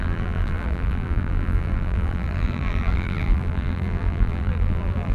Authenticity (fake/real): fake